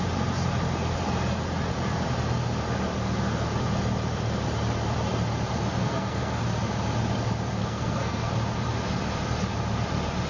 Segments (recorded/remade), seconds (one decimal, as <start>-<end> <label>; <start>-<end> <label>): 0.0-5.8 recorded; 5.8-6.4 remade; 6.4-7.6 recorded; 7.6-8.3 remade; 8.3-10.3 recorded